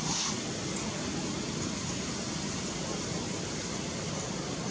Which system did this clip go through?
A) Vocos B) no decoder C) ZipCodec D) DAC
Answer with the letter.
B